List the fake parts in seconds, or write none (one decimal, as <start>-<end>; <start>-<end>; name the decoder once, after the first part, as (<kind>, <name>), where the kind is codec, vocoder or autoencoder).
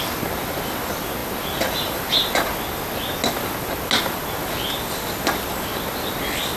none